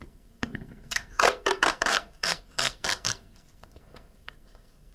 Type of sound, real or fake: fake